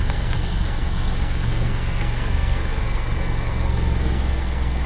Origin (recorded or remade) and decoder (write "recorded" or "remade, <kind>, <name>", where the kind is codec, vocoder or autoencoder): remade, codec, SNAC